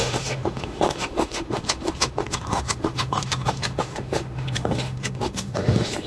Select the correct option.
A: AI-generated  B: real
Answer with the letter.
A